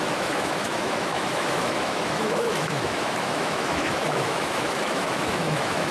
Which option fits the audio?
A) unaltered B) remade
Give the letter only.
B